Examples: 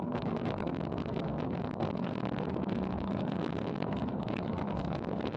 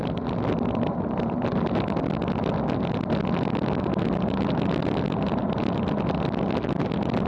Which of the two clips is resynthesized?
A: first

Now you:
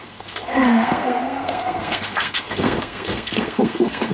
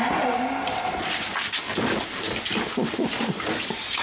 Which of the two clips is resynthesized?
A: first